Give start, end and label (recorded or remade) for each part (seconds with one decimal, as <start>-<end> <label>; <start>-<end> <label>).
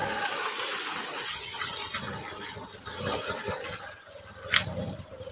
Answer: 0.0-1.3 recorded; 1.3-1.8 remade; 1.8-5.3 recorded